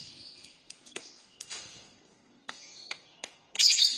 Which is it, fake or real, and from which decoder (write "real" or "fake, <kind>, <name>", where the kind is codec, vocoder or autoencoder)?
fake, codec, SNAC